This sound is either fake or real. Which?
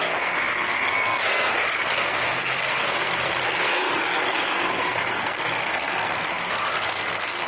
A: fake